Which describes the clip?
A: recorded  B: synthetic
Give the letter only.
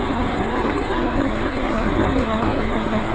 B